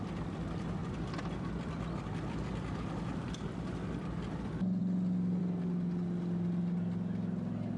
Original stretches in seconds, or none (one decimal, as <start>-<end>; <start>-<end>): 0.0-7.8